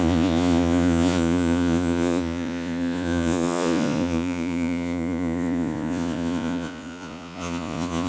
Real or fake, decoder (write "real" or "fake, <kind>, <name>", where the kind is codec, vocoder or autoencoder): fake, vocoder, Vocos